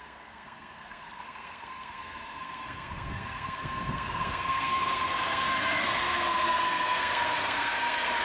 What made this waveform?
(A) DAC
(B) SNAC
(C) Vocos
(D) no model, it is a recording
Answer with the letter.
B